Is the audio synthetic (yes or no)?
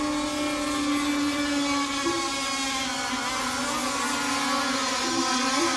no